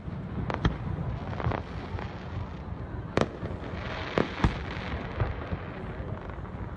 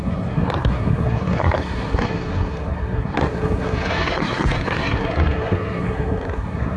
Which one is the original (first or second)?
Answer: first